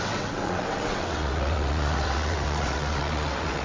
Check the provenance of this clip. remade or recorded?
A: remade